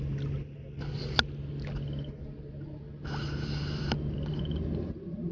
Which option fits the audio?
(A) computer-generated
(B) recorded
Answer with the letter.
B